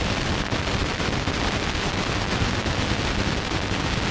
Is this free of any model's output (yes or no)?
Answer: yes